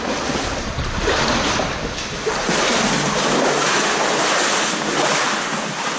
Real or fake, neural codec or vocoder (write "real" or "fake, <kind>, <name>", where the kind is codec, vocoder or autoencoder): real